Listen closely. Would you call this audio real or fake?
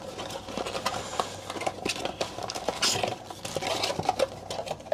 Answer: real